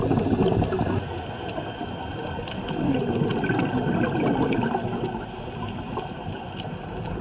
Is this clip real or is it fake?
real